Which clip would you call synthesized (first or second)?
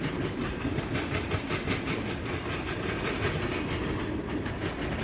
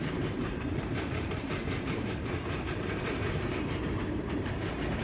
second